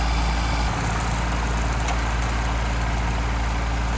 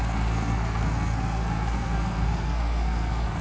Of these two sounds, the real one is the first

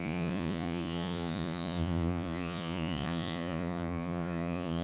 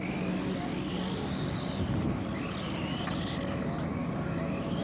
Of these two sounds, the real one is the second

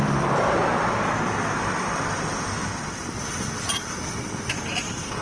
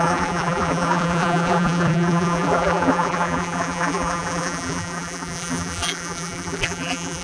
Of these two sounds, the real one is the first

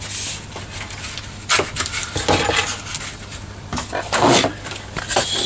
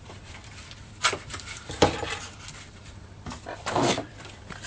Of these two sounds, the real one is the first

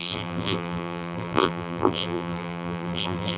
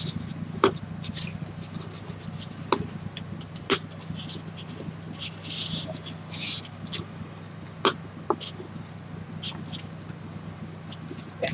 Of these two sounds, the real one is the second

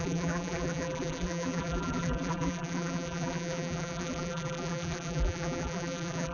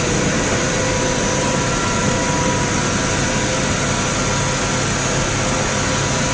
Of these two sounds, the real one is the second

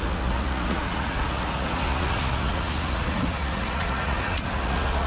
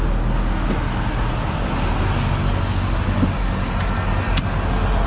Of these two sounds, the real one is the second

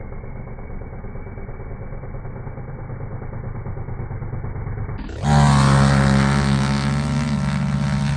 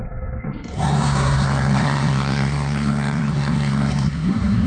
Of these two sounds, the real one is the first